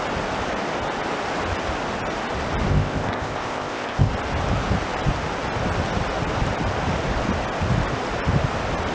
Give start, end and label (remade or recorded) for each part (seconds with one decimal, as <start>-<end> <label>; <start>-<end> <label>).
0.0-2.7 recorded; 2.7-4.1 remade; 4.1-8.9 recorded